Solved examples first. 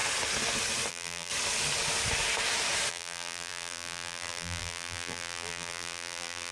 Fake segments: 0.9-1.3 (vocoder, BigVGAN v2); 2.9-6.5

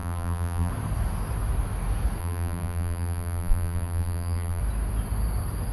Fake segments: 0.0-0.7 (vocoder, BigVGAN v2); 2.2-4.6

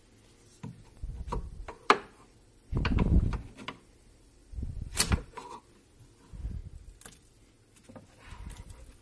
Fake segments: 0.5-5.6 (vocoder, BigVGAN v2)